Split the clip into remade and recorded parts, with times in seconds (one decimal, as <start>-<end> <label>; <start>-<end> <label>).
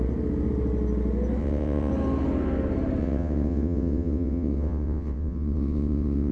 0.0-1.4 recorded; 1.4-1.9 remade; 1.9-3.0 recorded; 3.0-6.3 remade